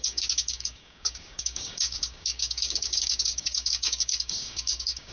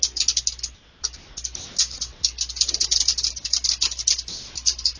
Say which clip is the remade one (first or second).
first